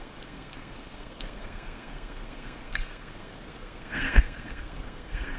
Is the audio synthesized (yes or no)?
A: yes